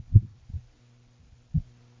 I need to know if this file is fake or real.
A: real